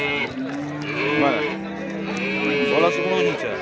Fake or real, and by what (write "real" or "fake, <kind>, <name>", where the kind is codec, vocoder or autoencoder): real